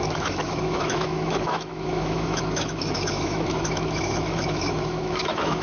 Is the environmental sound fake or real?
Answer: fake